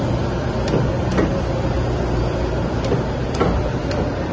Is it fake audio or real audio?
real